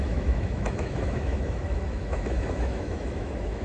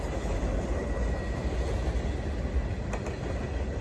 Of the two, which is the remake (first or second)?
first